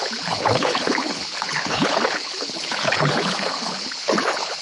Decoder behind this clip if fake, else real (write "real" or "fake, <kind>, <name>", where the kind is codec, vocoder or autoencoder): fake, codec, HILCodec